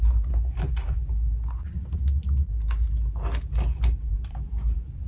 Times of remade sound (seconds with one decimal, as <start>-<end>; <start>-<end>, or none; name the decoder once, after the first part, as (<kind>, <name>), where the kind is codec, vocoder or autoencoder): 0.0-1.0 (vocoder, BigVGAN v2); 4.1-5.1